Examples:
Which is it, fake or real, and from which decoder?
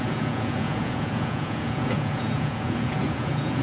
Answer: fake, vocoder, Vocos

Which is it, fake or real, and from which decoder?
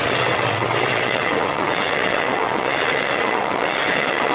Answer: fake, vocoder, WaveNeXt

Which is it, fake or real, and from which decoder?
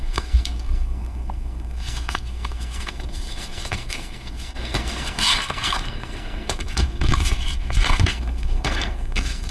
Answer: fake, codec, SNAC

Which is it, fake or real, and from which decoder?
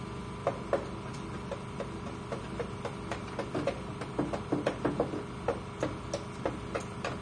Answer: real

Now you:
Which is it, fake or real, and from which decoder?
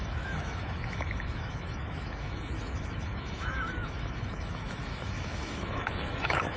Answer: fake, autoencoder, DAC-VAE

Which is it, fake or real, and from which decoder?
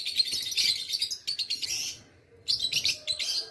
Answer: real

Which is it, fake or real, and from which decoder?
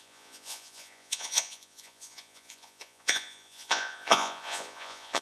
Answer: fake, vocoder, Vocos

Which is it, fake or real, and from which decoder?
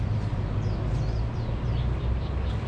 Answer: real